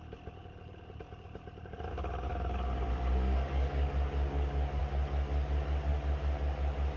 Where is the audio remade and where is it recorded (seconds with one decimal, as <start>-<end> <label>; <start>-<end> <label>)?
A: 0.0-2.3 recorded; 2.3-4.8 remade; 4.8-7.0 recorded